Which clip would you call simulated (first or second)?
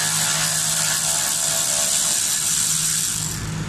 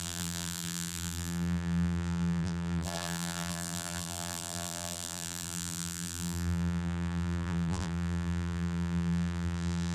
second